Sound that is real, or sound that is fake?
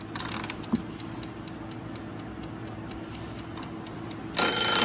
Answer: real